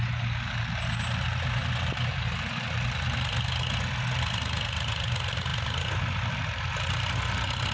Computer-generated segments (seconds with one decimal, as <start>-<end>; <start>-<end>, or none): none